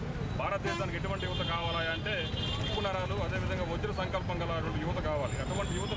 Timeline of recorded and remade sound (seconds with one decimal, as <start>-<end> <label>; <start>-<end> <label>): 0.0-6.0 recorded

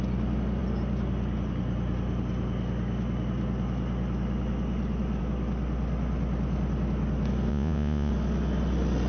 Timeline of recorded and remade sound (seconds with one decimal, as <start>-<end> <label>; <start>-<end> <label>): 0.0-7.5 recorded; 7.5-8.1 remade; 8.1-9.1 recorded

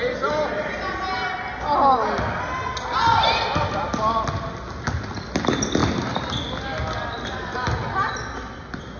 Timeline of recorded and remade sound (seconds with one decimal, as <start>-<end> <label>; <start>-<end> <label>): 0.0-9.0 recorded

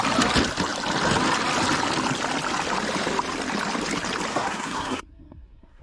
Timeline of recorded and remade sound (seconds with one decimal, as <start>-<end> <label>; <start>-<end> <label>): 0.0-4.3 recorded; 4.3-5.8 remade